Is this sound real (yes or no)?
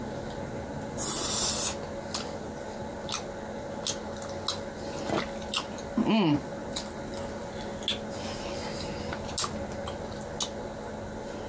yes